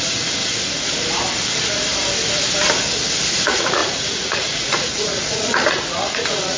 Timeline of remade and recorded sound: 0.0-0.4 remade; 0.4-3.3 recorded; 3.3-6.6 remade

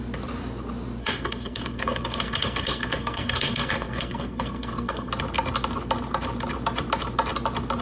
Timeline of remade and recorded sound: 0.0-1.0 recorded; 1.0-5.1 remade; 5.1-7.8 recorded

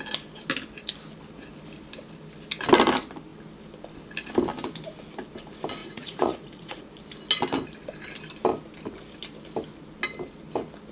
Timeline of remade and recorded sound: 0.0-5.8 recorded; 5.8-6.8 remade; 6.8-10.9 recorded

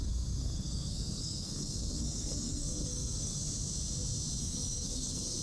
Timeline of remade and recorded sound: 0.0-3.4 remade; 3.4-4.4 recorded; 4.4-5.4 remade

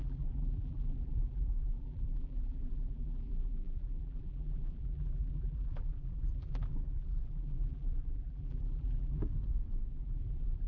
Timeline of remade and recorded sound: 0.0-9.2 remade; 9.2-9.9 recorded; 9.9-10.7 remade

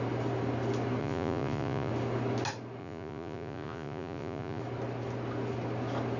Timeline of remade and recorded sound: 0.0-1.0 recorded; 1.0-1.9 remade; 1.9-2.8 recorded; 2.8-4.6 remade; 4.6-6.2 recorded

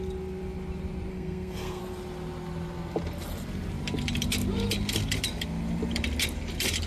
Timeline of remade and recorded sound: 0.0-1.1 recorded; 1.1-1.8 remade; 1.8-6.9 recorded